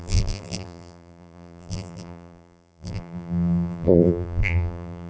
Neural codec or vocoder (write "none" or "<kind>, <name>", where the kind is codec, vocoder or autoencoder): vocoder, BigVGAN v2